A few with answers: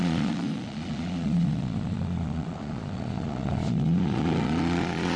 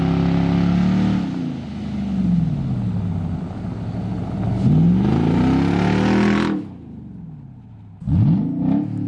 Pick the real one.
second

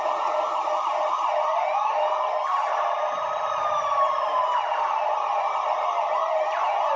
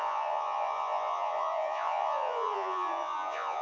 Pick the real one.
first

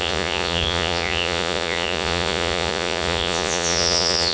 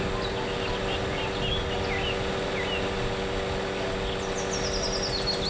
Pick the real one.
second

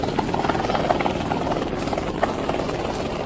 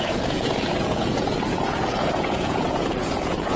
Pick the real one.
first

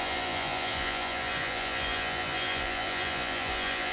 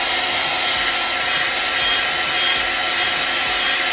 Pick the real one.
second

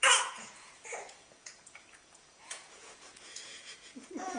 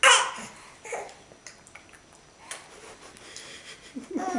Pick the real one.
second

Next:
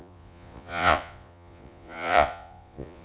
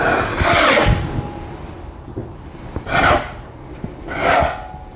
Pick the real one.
second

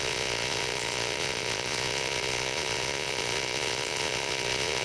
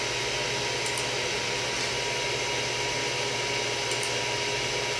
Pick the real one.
second